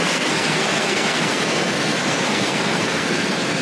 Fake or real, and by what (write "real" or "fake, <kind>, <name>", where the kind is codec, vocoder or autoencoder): fake, codec, SNAC